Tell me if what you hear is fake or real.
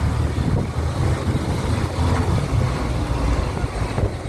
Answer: real